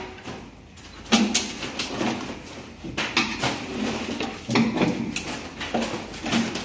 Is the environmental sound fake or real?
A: real